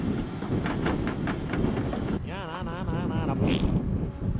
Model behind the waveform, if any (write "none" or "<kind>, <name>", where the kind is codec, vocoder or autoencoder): none